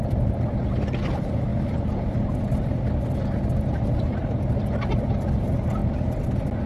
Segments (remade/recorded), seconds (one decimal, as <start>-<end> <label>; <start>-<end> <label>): 0.0-1.5 recorded; 1.5-2.1 remade; 2.1-5.8 recorded; 5.8-6.7 remade